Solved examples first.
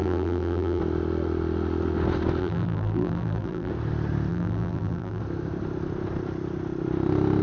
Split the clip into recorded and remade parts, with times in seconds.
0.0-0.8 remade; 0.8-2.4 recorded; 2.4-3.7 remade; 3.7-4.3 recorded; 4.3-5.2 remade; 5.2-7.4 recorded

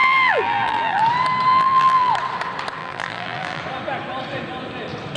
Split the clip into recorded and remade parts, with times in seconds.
0.0-1.0 remade; 1.0-1.5 recorded; 1.5-2.1 remade; 2.1-2.8 recorded; 2.8-3.6 remade; 3.6-5.2 recorded